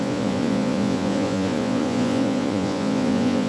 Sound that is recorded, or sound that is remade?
remade